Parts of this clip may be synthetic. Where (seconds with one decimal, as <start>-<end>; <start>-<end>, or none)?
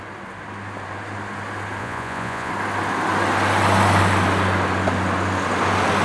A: 1.8-2.5